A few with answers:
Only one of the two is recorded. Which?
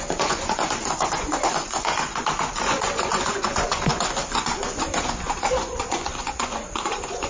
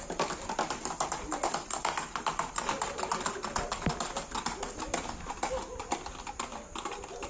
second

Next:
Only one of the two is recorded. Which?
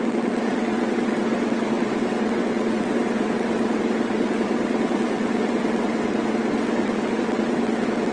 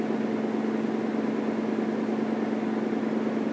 second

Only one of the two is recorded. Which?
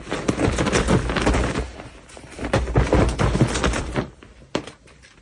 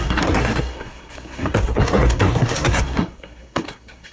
first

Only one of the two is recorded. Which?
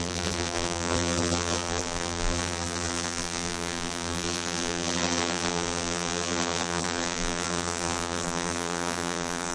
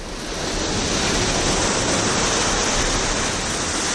second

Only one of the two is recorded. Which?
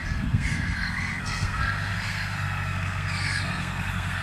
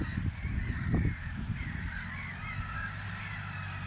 second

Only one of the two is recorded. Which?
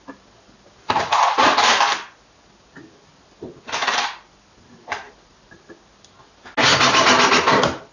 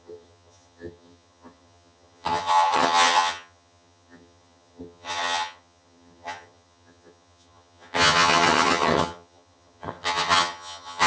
first